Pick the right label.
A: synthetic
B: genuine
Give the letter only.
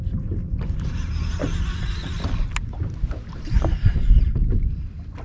B